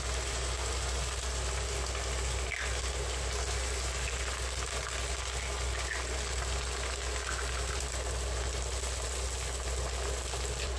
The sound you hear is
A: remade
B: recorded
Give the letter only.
B